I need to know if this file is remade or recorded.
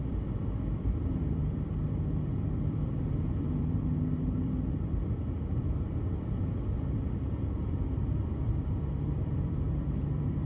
remade